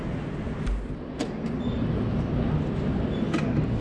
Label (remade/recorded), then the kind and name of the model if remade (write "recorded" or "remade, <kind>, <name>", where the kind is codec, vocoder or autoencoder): recorded